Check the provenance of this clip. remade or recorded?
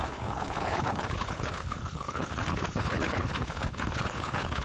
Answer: remade